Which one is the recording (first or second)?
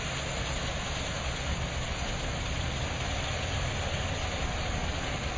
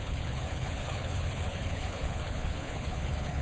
first